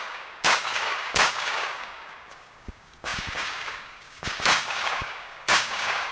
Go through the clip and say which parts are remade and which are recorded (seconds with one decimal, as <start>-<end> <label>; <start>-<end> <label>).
0.0-6.1 remade